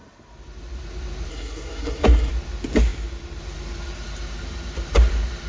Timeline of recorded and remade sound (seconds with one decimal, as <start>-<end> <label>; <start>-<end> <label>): 0.0-1.3 recorded; 1.3-2.3 remade; 2.3-5.5 recorded